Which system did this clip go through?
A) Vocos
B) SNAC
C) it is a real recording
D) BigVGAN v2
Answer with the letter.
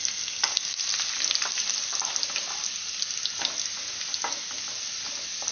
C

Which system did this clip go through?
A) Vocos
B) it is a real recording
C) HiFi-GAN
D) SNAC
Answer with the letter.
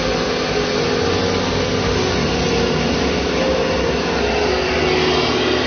B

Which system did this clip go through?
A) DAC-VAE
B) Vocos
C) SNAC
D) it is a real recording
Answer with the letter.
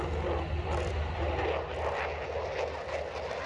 D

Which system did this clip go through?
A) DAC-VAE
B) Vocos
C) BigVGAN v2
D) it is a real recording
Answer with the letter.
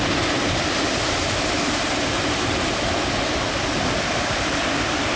D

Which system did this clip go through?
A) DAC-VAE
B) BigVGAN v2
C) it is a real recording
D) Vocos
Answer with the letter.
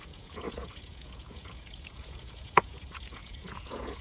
D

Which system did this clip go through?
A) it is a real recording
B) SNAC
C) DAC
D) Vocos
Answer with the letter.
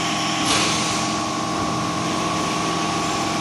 A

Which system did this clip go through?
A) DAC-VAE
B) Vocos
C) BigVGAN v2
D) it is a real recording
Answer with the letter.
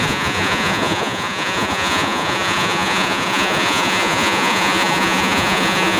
B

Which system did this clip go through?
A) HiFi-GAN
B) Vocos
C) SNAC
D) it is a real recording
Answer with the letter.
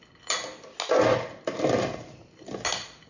D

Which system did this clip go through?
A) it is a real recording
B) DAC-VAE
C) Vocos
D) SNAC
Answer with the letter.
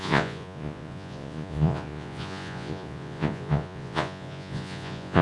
C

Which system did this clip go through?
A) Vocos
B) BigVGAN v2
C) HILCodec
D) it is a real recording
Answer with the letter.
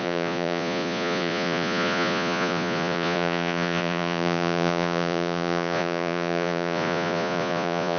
A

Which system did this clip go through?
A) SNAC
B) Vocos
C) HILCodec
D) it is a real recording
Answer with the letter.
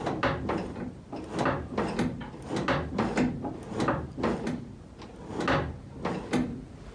D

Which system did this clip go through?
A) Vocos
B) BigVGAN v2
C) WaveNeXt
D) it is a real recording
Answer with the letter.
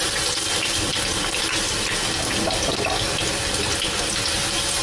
D